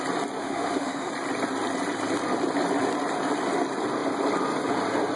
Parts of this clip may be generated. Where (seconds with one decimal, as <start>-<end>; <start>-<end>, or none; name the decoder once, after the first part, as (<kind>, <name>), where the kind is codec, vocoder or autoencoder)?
0.4-1.1 (autoencoder, DAC-VAE)